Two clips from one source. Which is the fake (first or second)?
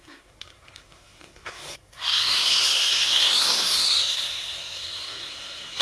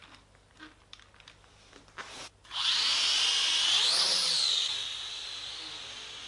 first